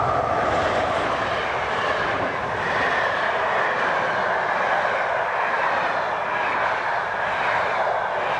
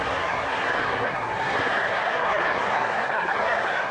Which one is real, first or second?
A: first